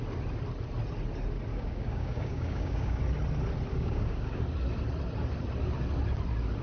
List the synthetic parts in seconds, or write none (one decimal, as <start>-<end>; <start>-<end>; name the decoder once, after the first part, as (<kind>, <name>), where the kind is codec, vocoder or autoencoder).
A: 1.5-3.0 (codec, DAC); 3.7-4.4